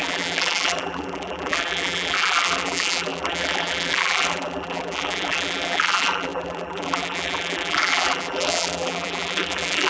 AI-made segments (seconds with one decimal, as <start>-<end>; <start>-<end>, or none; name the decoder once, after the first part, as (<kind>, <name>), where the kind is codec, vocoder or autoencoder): 0.0-9.9 (vocoder, BigVGAN v2)